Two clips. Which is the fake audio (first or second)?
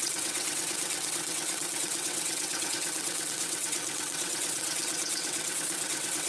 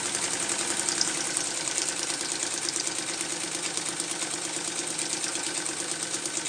first